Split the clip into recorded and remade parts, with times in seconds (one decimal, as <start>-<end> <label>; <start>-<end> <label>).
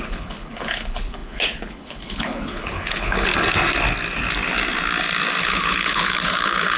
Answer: 0.0-3.3 remade; 3.3-5.4 recorded; 5.4-6.8 remade